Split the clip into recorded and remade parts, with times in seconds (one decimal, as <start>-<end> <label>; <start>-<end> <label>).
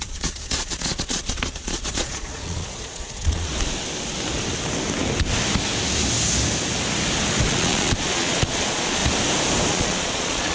0.0-3.5 remade; 3.5-7.5 recorded; 7.5-9.0 remade; 9.0-9.7 recorded; 9.7-10.5 remade